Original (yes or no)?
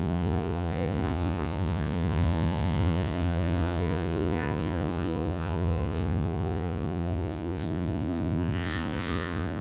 no